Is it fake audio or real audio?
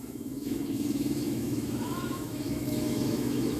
fake